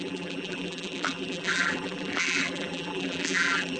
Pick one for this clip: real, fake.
fake